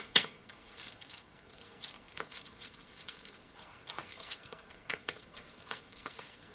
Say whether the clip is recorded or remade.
remade